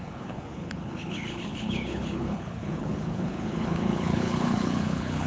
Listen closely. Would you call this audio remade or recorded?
remade